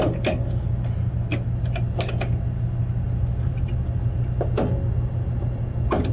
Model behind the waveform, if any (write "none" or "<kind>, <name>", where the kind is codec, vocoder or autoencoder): none